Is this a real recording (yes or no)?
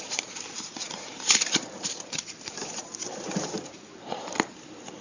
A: no